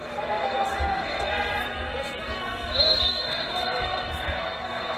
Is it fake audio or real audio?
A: fake